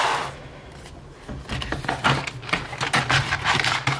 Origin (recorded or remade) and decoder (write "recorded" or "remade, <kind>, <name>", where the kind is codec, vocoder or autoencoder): recorded